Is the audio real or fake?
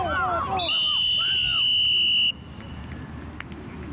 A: real